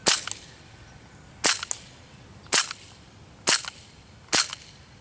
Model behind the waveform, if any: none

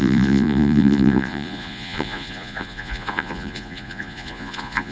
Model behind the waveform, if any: vocoder, Vocos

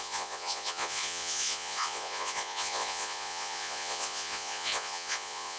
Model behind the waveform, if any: vocoder, Vocos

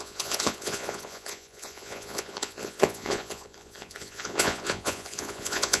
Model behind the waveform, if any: vocoder, Vocos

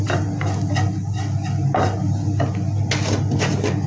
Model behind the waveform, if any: none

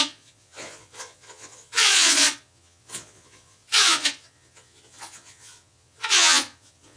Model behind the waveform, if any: vocoder, Vocos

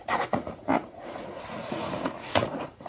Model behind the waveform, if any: vocoder, Vocos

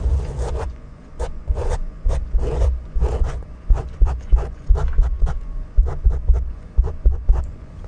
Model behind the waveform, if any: vocoder, Vocos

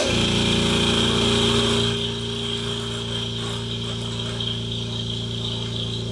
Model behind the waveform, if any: none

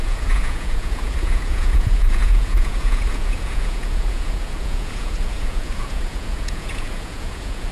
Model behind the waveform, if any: vocoder, Vocos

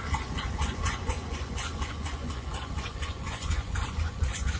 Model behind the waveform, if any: vocoder, Vocos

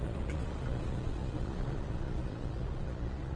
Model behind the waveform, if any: vocoder, Vocos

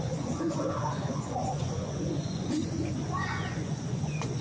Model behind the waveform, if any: vocoder, Vocos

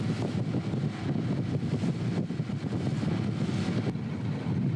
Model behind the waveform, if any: none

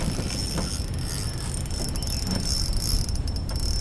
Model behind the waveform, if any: none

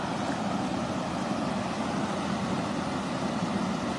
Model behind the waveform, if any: none